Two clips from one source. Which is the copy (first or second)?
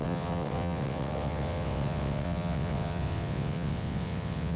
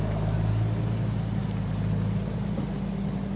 first